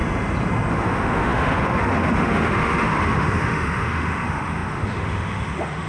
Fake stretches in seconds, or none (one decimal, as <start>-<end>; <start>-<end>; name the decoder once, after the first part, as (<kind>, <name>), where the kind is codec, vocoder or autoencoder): 0.7-5.9 (autoencoder, DAC-VAE)